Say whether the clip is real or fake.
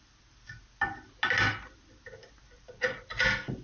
real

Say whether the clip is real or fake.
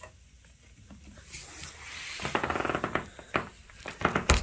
real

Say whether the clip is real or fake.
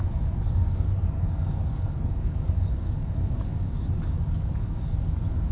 fake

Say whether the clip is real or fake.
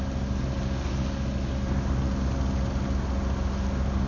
real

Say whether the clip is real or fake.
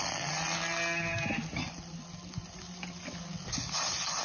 real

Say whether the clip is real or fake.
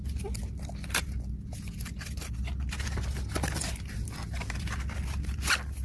real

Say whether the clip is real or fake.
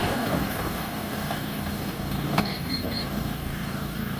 fake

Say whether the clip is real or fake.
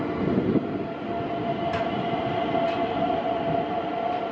real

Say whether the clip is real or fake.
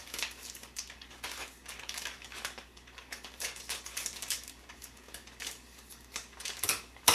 fake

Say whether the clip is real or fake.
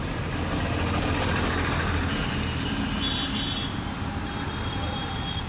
real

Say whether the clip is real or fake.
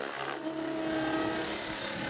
real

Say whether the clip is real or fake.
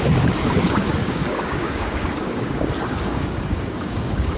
fake